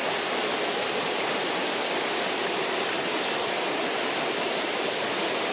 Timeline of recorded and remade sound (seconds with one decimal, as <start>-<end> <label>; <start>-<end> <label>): 0.0-5.5 recorded